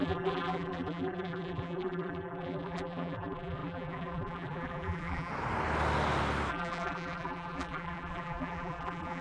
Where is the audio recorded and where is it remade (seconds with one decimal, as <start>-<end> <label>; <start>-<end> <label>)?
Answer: 0.0-5.3 remade; 5.3-6.5 recorded; 6.5-9.2 remade